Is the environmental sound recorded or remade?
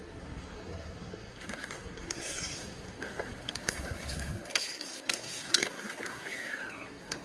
remade